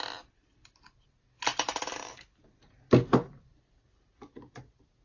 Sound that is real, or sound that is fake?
real